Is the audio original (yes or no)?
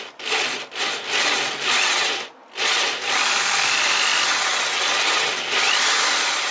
yes